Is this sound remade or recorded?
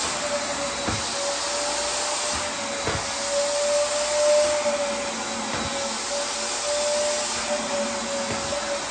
recorded